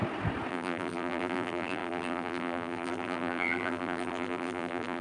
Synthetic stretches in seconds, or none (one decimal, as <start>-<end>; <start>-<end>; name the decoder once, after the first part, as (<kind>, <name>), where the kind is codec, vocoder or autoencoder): 0.5-5.0 (vocoder, BigVGAN v2)